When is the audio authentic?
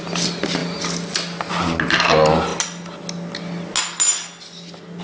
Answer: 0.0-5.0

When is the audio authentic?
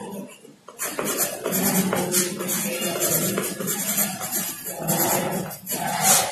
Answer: 0.0-4.0; 4.5-6.3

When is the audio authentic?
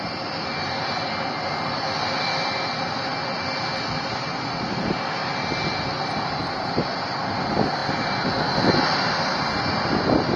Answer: 0.0-10.4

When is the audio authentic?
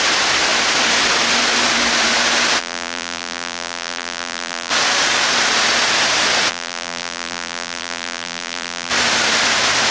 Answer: 0.0-2.6; 4.7-6.5; 8.9-9.9